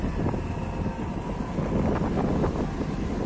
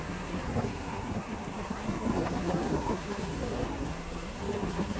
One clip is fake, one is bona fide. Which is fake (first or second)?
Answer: second